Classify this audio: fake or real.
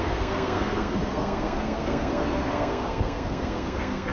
fake